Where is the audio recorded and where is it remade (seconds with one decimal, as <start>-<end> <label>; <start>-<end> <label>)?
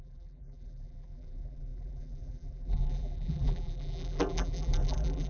0.0-5.3 remade